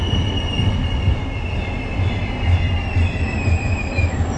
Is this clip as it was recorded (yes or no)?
yes